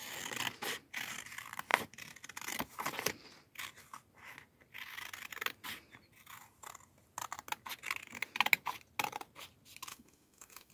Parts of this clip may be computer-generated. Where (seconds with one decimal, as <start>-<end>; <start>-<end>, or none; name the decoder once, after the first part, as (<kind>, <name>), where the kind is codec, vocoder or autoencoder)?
9.9-10.7 (autoencoder, DAC-VAE)